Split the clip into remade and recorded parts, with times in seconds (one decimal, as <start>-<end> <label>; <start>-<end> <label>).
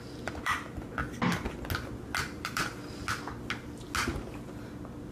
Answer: 0.0-1.0 remade; 1.0-2.2 recorded; 2.2-2.6 remade; 2.6-5.1 recorded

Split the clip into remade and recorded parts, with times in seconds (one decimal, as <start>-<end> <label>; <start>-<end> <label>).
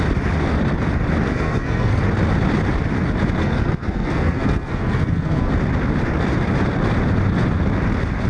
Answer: 0.0-1.3 recorded; 1.3-2.0 remade; 2.0-3.4 recorded; 3.4-5.5 remade; 5.5-8.3 recorded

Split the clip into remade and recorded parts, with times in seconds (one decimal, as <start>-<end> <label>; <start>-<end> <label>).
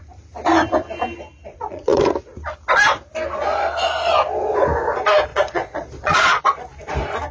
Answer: 0.0-1.5 recorded; 1.5-2.0 remade; 2.0-5.3 recorded; 5.3-6.4 remade; 6.4-7.3 recorded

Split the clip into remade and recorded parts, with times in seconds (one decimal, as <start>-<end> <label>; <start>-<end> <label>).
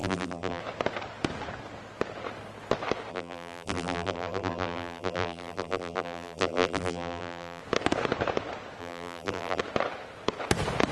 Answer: 0.0-0.6 remade; 0.6-3.1 recorded; 3.1-7.6 remade; 7.6-8.8 recorded; 8.8-9.6 remade; 9.6-10.9 recorded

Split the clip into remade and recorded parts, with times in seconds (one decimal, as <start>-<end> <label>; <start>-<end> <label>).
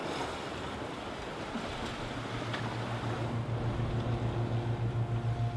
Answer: 0.0-5.6 recorded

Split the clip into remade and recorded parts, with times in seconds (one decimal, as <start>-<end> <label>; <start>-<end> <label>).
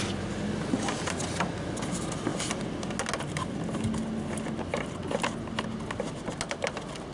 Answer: 0.0-7.1 recorded